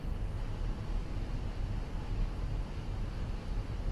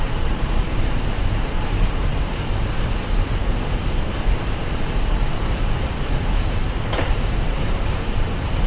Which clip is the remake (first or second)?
second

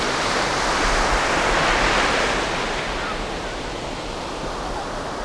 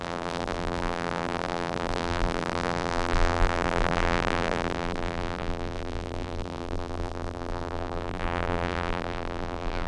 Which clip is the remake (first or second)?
second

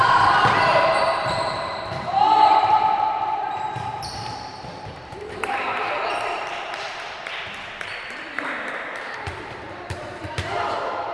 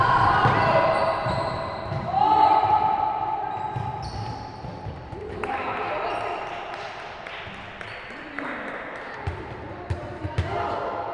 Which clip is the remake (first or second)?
first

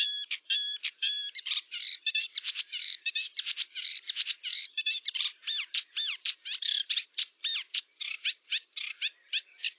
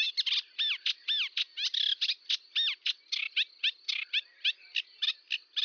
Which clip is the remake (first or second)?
first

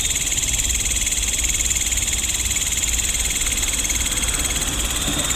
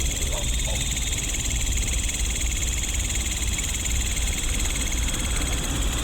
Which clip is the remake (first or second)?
second